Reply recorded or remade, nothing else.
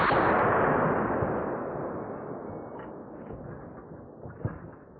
recorded